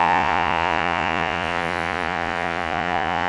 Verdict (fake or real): fake